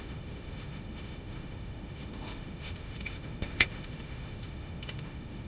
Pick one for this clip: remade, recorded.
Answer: remade